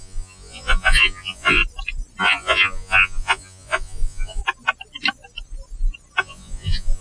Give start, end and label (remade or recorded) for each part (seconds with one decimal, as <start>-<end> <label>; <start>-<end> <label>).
0.0-1.6 remade; 1.6-2.2 recorded; 2.2-4.4 remade; 4.4-6.2 recorded; 6.2-7.0 remade